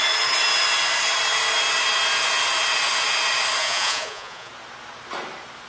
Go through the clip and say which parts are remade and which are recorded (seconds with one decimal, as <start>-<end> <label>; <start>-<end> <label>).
0.0-3.6 recorded; 3.6-4.5 remade; 4.5-5.7 recorded